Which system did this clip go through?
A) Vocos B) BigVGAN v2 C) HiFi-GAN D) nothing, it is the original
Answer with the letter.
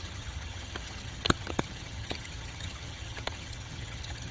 C